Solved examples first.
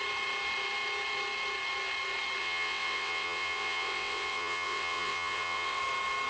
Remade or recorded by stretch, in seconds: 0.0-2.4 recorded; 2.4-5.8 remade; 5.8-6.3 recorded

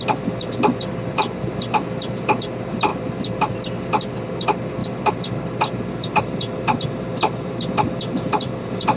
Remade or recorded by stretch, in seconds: 0.0-1.2 remade; 1.2-2.5 recorded; 2.5-9.0 remade

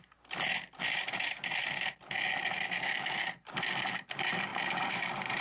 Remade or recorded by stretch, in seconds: 0.0-4.5 recorded; 4.5-5.4 remade

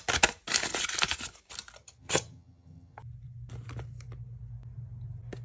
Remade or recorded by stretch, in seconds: 0.0-1.8 recorded; 1.8-3.0 remade; 3.0-5.4 recorded